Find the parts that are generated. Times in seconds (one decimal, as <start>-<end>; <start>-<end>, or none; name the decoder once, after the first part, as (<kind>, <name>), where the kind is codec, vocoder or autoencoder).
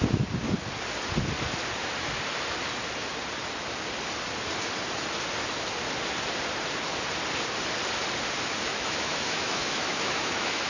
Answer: 8.7-10.7 (autoencoder, DAC-VAE)